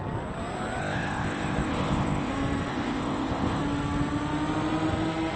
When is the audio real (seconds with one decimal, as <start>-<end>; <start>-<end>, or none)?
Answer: 0.0-0.8; 2.3-2.7; 3.6-5.4

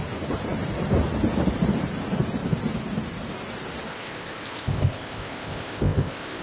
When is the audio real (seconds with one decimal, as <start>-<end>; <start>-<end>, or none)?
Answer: 0.0-3.9